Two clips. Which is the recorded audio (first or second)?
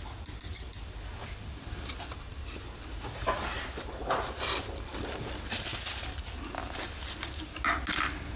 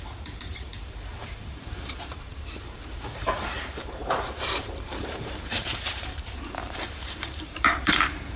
first